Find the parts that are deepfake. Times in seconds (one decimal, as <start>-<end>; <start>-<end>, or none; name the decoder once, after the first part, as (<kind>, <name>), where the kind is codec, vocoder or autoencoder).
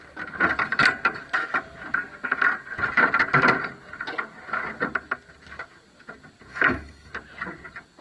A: 6.5-7.1 (autoencoder, DAC-VAE)